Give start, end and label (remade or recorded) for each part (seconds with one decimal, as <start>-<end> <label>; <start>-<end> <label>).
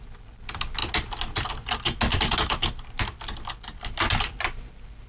0.0-5.1 recorded